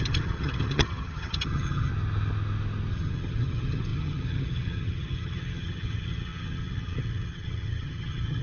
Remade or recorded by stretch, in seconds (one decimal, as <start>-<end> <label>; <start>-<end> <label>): 0.0-1.9 remade; 1.9-2.9 recorded; 2.9-8.4 remade